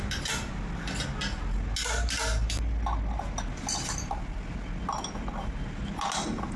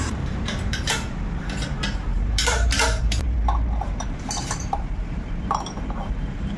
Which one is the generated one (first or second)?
second